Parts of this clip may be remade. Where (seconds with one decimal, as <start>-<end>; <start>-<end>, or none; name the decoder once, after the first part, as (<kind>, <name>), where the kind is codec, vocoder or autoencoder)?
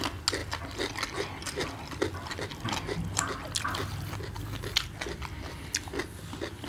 none